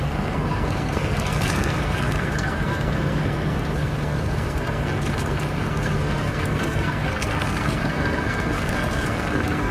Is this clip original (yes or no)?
no